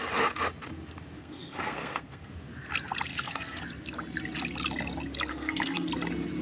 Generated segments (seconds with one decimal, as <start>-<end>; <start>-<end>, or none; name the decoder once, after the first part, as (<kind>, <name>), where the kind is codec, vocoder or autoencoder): 1.2-2.3 (codec, SNAC); 3.1-3.6; 5.3-5.9